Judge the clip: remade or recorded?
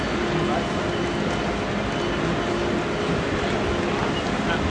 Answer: recorded